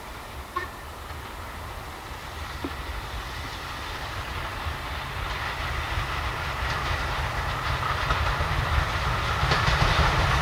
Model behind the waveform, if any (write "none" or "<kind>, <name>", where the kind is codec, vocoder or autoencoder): none